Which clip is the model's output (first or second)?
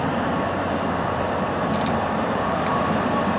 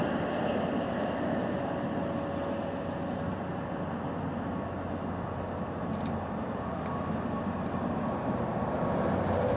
first